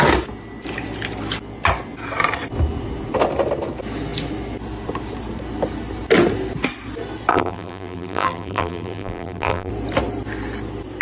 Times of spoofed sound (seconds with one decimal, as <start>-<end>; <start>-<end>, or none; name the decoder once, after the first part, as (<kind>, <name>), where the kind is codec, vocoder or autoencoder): 7.3-9.7 (vocoder, BigVGAN v2)